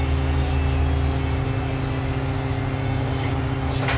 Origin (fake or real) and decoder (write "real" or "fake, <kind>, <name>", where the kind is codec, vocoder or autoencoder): real